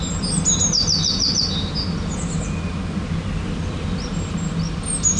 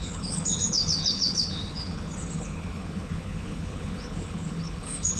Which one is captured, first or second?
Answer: first